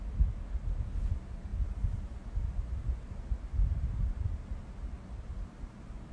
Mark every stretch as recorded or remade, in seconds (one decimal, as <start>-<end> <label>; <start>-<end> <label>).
0.0-6.1 recorded